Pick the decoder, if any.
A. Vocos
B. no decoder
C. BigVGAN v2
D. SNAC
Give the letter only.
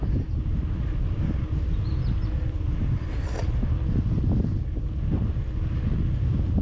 B